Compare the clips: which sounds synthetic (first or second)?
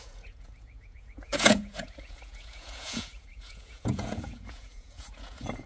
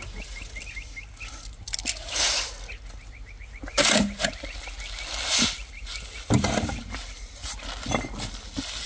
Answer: first